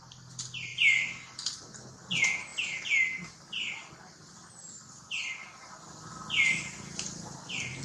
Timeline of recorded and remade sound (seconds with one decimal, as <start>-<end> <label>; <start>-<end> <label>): 0.0-7.8 recorded